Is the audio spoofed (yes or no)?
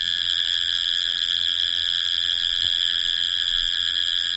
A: yes